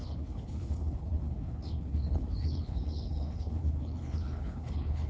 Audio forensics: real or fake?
fake